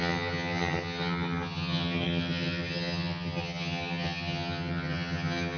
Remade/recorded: remade